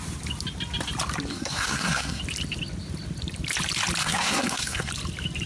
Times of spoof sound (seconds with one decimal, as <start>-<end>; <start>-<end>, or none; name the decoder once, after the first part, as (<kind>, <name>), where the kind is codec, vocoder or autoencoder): 1.3-2.2 (codec, SNAC); 4.0-4.9